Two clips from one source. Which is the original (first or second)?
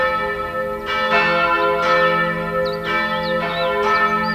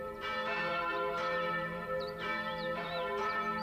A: first